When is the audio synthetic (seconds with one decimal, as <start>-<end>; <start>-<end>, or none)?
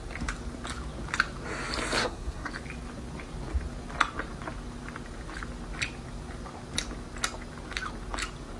2.0-2.5